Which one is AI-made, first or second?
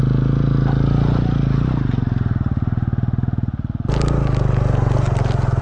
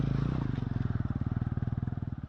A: second